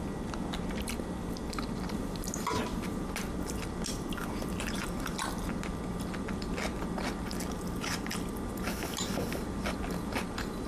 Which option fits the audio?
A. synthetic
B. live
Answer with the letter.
B